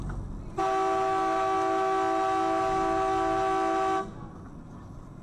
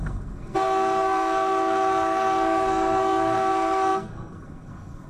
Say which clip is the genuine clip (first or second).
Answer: first